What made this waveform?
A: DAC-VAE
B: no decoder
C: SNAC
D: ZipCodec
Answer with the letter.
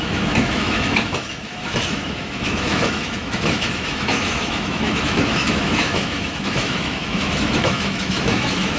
A